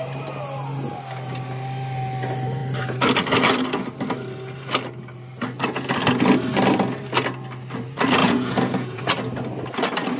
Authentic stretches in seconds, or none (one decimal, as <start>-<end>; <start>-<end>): 0.0-8.2; 9.0-10.2